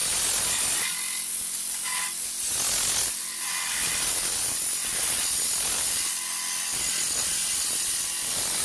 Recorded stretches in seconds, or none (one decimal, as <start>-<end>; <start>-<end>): 0.0-8.6